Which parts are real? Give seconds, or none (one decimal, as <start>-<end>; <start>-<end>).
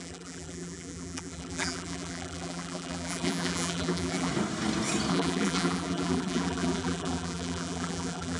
4.3-5.1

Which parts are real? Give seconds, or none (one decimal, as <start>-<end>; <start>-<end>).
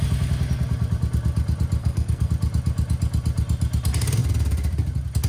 0.0-1.8; 2.3-5.3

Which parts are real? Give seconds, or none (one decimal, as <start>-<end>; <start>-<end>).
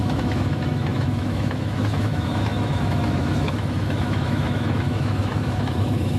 none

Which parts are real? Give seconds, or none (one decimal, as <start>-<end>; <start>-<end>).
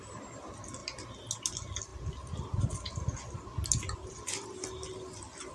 0.0-5.5